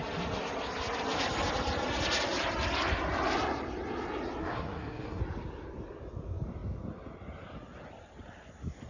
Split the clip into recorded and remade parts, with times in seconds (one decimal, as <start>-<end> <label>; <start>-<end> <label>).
0.0-4.4 recorded; 4.4-5.2 remade; 5.2-8.9 recorded